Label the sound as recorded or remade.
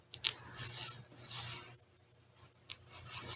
recorded